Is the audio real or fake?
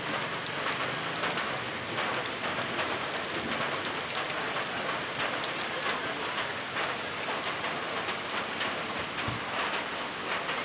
real